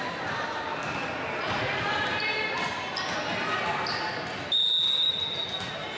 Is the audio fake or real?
real